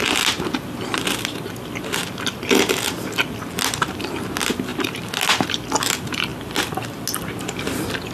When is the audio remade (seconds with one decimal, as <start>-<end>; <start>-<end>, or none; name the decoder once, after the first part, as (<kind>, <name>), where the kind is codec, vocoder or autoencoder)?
none